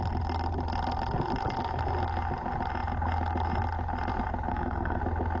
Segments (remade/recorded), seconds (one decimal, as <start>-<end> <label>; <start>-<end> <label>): 0.0-4.5 recorded; 4.5-5.0 remade; 5.0-5.4 recorded